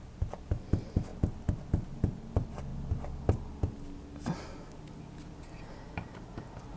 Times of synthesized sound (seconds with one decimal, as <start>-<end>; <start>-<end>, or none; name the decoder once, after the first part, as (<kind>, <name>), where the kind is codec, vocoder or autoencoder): none

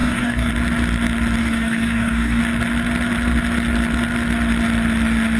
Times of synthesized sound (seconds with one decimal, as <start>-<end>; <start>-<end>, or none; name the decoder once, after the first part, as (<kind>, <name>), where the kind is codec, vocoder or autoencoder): 0.0-0.5 (codec, DAC); 1.4-2.4

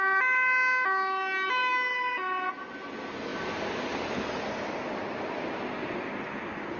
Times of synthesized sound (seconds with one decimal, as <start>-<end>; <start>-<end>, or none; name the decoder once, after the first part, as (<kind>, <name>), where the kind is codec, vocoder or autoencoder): none

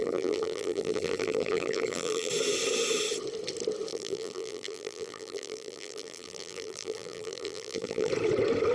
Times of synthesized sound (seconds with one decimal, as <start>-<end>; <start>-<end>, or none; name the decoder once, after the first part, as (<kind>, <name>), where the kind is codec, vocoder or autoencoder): 0.0-2.3 (vocoder, BigVGAN v2); 3.9-8.1

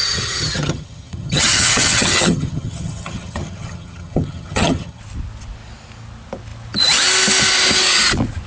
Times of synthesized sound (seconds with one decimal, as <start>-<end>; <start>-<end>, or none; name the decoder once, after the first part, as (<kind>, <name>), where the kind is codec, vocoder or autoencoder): 0.0-5.0 (vocoder, HiFi-GAN)

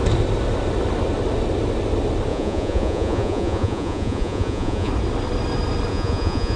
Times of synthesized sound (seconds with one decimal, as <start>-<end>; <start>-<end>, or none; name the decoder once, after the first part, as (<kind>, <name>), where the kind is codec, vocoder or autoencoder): 2.3-4.9 (vocoder, Vocos); 5.9-6.6

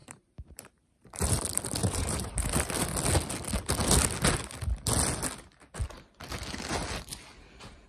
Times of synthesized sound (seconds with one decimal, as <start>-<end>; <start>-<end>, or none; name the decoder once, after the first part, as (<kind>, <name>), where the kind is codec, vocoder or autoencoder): 0.0-1.4 (vocoder, BigVGAN v2); 1.8-2.9

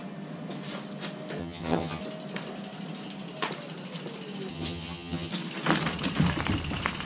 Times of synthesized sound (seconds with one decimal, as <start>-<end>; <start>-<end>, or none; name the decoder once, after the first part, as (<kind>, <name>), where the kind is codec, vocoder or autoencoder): 1.4-2.0 (vocoder, HiFi-GAN); 4.5-5.3